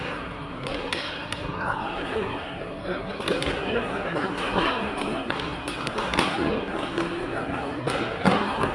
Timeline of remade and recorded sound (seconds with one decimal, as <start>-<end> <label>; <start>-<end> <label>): 0.0-8.7 remade